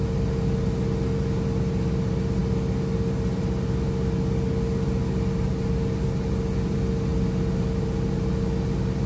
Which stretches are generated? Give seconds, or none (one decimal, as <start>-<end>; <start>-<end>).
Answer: none